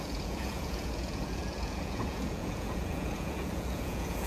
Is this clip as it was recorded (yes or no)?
no